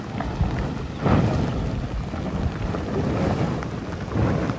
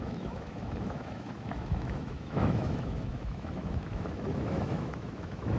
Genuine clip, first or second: first